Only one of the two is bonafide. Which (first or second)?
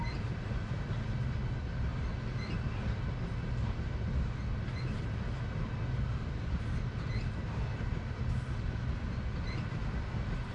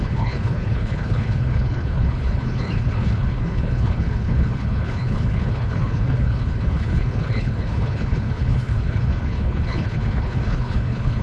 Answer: first